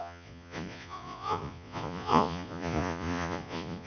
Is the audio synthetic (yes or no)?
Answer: yes